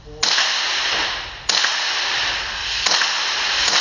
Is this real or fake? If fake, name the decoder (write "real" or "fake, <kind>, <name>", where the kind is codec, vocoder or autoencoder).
real